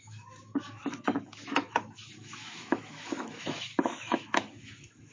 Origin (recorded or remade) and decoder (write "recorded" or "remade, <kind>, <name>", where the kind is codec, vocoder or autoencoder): remade, autoencoder, DAC-VAE